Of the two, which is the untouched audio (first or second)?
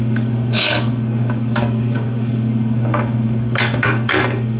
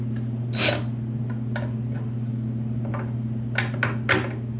second